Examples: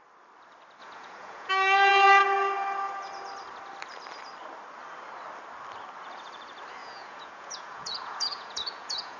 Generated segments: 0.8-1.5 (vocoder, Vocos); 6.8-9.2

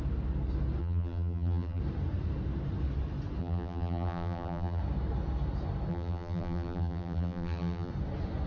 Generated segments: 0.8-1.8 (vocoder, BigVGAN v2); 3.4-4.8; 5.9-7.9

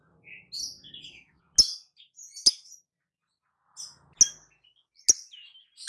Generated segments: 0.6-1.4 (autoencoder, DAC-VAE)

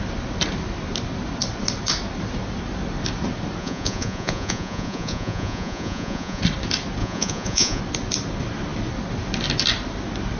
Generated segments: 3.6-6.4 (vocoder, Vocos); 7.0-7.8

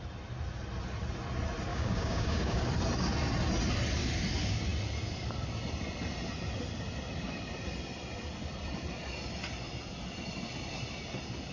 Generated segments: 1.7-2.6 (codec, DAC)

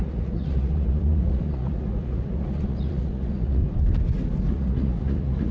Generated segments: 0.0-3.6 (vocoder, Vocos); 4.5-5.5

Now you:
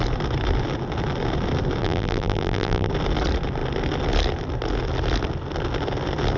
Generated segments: 1.8-2.9 (vocoder, BigVGAN v2)

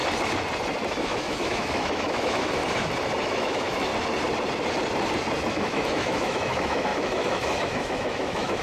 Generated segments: 1.0-2.6 (autoencoder, DAC-VAE); 3.2-3.9; 5.5-8.6